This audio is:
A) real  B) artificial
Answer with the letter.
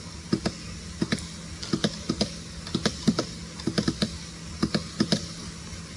A